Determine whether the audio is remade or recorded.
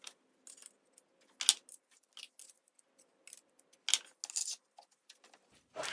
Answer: recorded